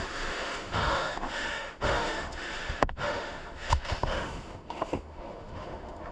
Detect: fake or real fake